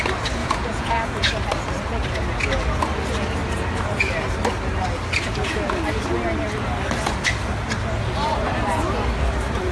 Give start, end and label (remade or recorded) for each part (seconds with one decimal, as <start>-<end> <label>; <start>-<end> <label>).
0.0-0.4 recorded; 0.4-1.3 remade; 1.3-9.7 recorded